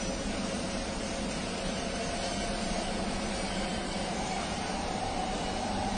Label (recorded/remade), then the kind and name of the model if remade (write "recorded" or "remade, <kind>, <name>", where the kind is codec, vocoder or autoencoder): remade, vocoder, BigVGAN v2